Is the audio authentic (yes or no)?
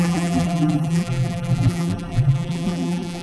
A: no